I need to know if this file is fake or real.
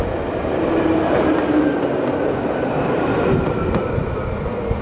real